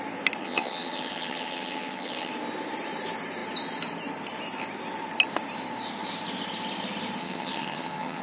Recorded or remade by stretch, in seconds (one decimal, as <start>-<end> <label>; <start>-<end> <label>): 0.0-0.4 recorded; 0.4-2.3 remade; 2.3-7.2 recorded; 7.2-8.2 remade